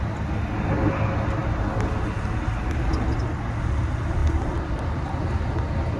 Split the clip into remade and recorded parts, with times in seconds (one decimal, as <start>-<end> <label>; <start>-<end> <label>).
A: 0.0-6.0 recorded